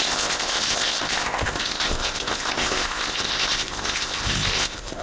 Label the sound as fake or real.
fake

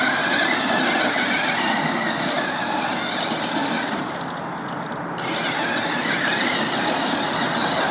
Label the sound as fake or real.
real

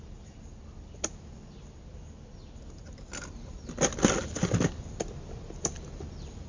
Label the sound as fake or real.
real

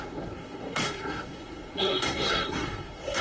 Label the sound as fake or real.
fake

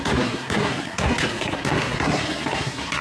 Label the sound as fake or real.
fake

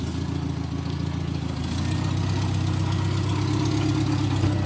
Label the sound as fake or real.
real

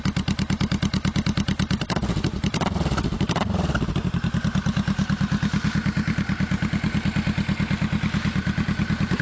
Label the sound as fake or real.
real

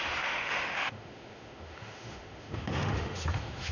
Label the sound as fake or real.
fake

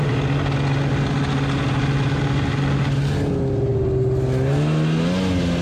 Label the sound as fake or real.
real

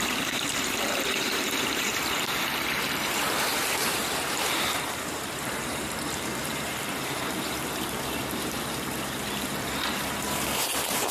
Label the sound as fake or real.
fake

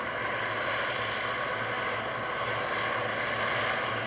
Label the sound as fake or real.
real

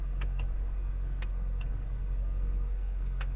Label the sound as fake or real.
fake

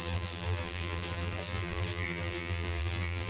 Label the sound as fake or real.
fake